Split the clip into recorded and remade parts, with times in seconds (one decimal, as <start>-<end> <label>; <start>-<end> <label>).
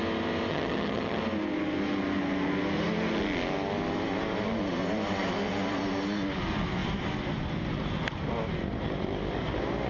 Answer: 0.0-0.5 recorded; 0.5-1.2 remade; 1.2-9.9 recorded